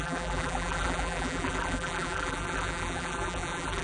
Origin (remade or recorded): remade